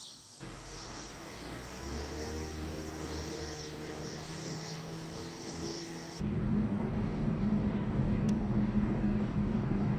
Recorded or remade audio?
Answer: remade